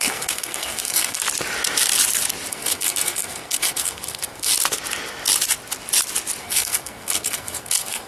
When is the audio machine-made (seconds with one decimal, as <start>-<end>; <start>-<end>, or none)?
0.0-1.2; 2.5-4.5; 6.4-8.1